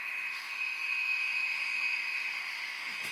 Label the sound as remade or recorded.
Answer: remade